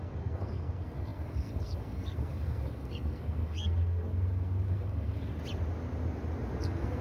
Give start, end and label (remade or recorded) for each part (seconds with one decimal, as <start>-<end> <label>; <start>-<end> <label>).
0.0-5.3 remade; 5.3-6.6 recorded; 6.6-7.0 remade